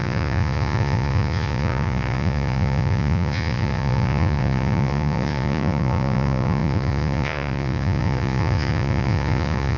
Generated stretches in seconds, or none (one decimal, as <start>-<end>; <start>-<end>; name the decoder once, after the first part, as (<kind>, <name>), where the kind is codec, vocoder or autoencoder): 0.0-9.8 (vocoder, Vocos)